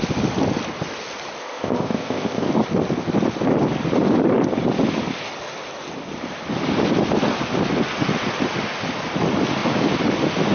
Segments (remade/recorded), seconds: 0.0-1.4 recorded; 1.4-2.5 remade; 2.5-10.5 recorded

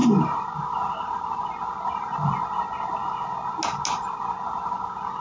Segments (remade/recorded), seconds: 0.0-5.2 recorded

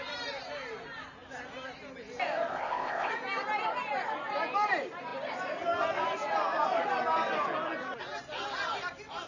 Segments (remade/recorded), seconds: 0.0-2.5 recorded; 2.5-3.1 remade; 3.1-9.3 recorded

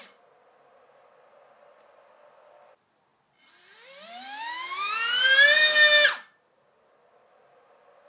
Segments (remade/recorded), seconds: 0.0-8.1 recorded

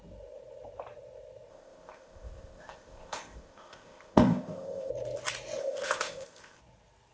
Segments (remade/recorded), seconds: 0.0-1.5 recorded; 1.5-4.9 remade; 4.9-5.6 recorded; 5.6-6.6 remade; 6.6-7.1 recorded

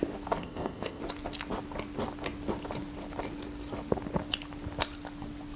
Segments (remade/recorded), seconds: 0.0-0.4 recorded; 0.4-1.0 remade; 1.0-5.6 recorded